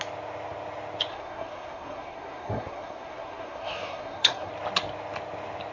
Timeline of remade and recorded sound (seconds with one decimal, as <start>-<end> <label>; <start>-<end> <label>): 0.0-1.1 recorded; 1.1-4.5 remade; 4.5-5.7 recorded